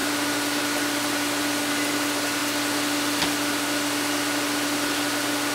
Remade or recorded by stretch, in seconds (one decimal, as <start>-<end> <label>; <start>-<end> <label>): 0.0-1.7 remade; 1.7-5.5 recorded